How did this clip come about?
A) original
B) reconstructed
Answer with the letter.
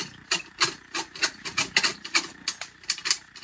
A